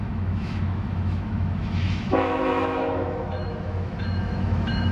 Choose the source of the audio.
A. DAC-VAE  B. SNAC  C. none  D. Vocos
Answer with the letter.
A